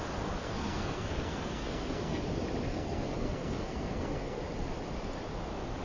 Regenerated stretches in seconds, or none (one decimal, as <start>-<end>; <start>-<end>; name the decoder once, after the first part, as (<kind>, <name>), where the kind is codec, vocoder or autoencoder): 0.4-2.2 (codec, SNAC); 2.7-4.4